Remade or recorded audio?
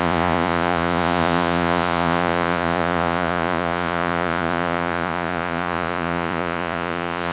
remade